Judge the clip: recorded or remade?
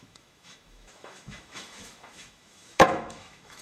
remade